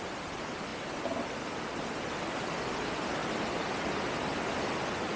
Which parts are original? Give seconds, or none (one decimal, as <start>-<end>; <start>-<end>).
0.0-5.2